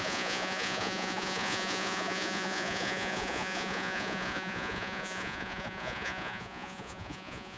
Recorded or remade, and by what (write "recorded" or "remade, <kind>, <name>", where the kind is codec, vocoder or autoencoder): remade, vocoder, Vocos